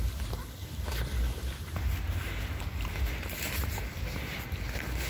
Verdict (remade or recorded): recorded